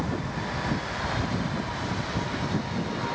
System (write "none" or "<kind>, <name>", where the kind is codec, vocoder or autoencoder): none